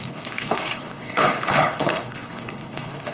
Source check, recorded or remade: remade